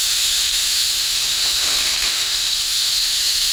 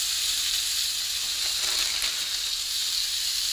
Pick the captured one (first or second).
second